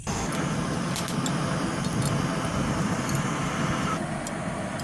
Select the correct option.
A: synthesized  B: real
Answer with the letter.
B